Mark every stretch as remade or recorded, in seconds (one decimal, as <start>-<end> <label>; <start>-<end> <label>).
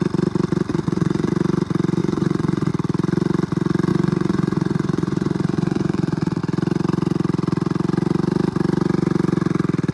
0.0-0.7 recorded; 0.7-1.3 remade; 1.3-2.0 recorded; 2.0-2.7 remade; 2.7-3.9 recorded; 3.9-6.4 remade; 6.4-9.9 recorded